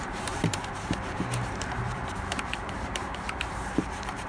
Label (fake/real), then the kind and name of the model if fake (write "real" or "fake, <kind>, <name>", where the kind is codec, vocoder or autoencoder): fake, vocoder, BigVGAN v2